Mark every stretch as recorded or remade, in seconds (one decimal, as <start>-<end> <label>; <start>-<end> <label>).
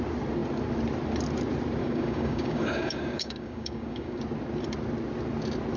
0.0-1.8 recorded; 1.8-4.2 remade; 4.2-5.8 recorded